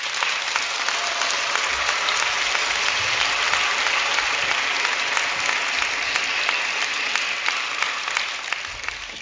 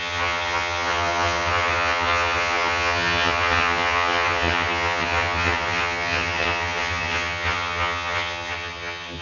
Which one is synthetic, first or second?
second